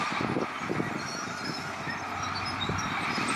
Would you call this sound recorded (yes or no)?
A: yes